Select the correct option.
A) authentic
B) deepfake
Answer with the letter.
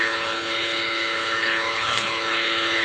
B